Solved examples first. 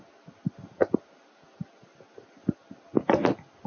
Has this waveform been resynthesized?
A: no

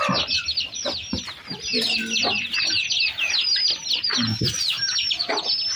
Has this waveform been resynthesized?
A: no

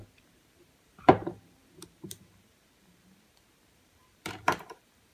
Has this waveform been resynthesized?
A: yes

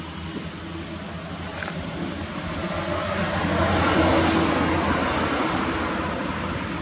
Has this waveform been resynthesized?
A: no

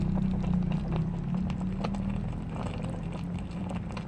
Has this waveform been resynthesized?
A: yes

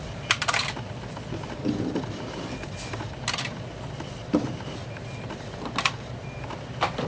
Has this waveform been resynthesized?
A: yes